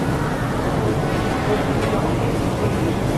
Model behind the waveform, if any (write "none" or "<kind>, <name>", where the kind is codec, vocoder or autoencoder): none